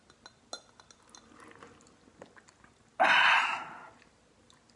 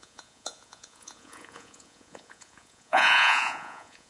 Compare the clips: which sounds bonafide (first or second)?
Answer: first